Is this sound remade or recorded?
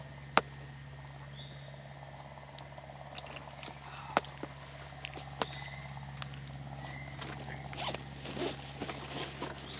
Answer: recorded